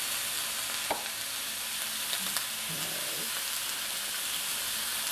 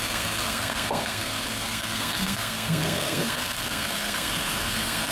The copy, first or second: second